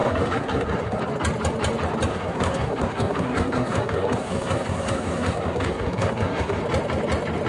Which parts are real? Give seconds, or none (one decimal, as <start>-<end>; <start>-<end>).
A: 1.0-2.1; 6.6-7.5